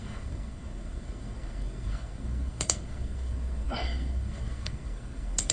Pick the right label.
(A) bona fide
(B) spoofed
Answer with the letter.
B